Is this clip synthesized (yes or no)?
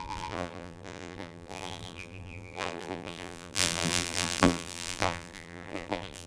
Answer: yes